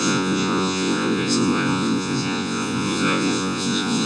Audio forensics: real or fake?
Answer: fake